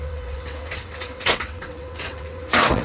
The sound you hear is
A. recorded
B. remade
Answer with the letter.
B